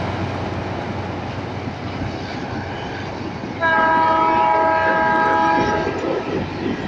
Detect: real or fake real